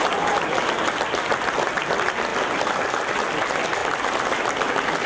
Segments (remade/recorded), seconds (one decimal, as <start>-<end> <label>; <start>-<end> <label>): 0.0-5.1 recorded